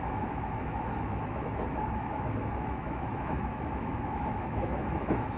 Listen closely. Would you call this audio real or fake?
fake